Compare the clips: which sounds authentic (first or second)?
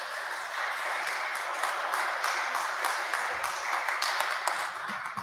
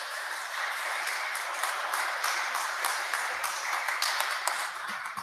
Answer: first